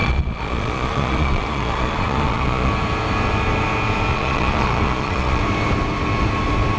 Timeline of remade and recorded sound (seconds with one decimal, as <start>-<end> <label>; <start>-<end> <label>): 0.0-2.7 remade; 2.7-4.1 recorded; 4.1-5.4 remade; 5.4-6.8 recorded